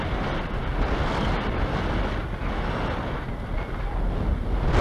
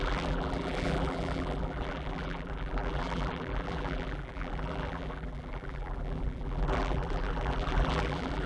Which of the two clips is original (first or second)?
first